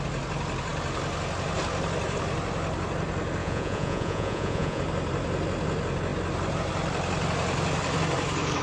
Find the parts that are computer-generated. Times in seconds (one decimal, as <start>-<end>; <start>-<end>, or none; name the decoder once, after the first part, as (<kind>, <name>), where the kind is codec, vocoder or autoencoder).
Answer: 3.4-4.8 (vocoder, Vocos)